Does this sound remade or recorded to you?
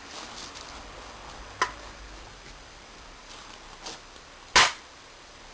recorded